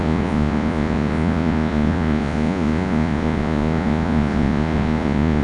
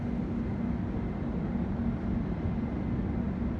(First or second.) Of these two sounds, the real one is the second